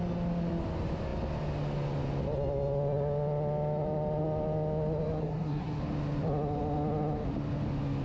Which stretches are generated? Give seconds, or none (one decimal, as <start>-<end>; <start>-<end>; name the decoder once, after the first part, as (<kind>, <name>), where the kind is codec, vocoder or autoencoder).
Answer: 5.2-5.8 (codec, SNAC)